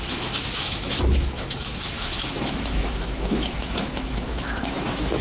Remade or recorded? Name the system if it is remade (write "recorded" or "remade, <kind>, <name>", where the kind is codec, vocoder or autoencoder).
remade, autoencoder, DAC-VAE